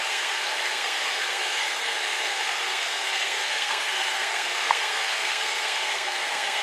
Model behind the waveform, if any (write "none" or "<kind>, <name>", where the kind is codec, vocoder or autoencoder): codec, SNAC